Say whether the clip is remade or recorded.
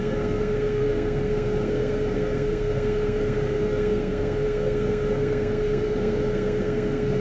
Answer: remade